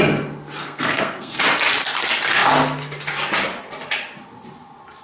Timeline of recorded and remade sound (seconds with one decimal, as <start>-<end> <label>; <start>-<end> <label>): 0.0-0.6 recorded; 0.6-1.4 remade; 1.4-5.0 recorded